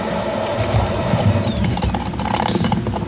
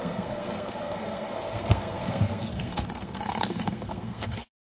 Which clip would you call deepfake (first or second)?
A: second